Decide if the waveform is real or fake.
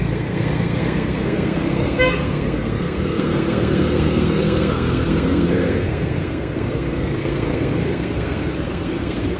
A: fake